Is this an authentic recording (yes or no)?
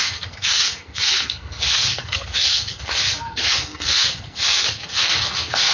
no